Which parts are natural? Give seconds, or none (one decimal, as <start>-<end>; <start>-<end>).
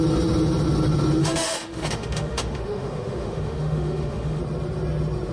0.0-1.2; 4.4-5.3